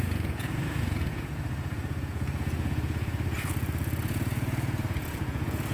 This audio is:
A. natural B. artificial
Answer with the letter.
B